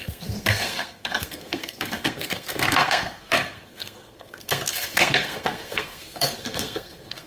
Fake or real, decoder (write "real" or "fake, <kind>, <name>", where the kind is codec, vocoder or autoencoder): fake, codec, SNAC